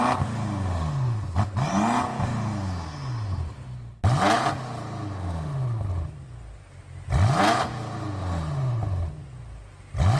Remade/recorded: recorded